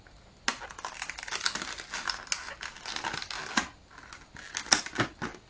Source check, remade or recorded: recorded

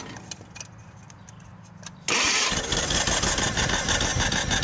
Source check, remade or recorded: recorded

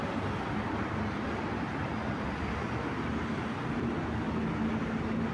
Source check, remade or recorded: recorded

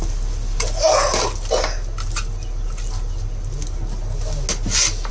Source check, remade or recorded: recorded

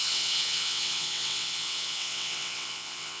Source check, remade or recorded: remade